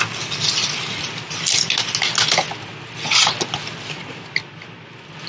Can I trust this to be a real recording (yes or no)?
yes